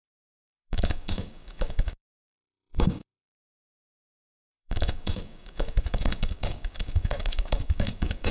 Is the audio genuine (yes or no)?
no